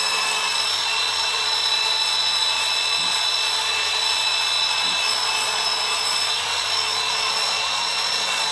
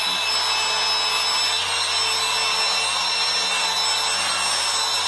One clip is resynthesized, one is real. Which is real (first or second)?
second